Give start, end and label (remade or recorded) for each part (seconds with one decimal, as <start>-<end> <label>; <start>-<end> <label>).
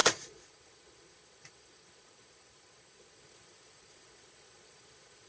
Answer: 0.0-5.3 remade